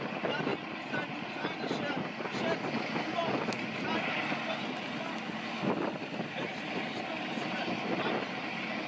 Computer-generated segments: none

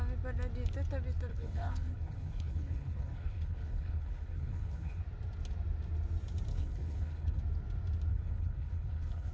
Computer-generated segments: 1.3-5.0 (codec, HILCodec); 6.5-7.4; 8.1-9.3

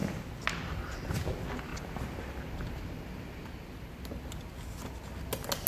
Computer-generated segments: none